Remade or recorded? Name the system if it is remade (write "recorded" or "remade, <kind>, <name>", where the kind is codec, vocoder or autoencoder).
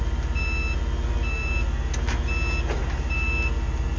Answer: recorded